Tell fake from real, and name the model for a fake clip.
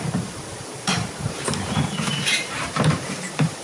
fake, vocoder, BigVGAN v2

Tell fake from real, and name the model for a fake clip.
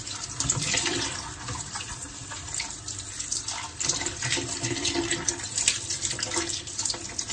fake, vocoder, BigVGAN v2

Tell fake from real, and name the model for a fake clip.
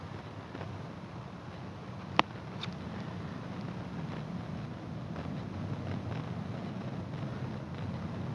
real